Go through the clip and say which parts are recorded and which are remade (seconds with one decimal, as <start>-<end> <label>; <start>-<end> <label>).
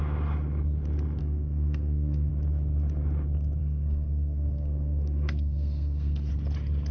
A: 0.0-1.2 recorded; 1.2-2.3 remade; 2.3-3.6 recorded; 3.6-6.3 remade; 6.3-6.9 recorded